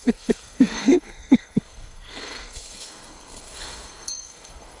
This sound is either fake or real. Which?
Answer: fake